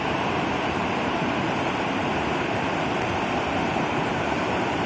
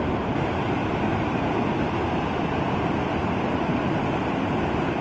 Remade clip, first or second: first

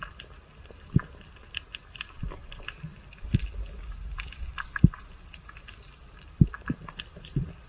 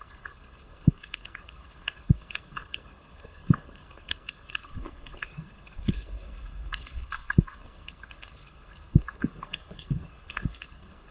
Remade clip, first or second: second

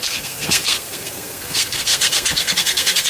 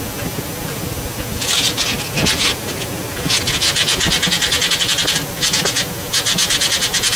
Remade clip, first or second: first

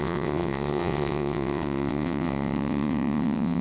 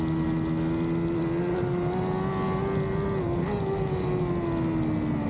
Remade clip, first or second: first